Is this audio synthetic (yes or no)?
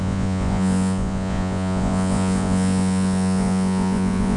yes